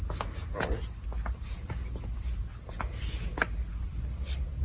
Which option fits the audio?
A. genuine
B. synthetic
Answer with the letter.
A